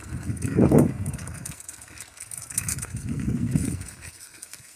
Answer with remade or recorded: remade